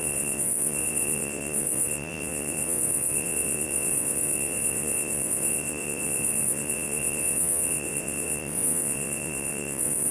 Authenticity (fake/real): fake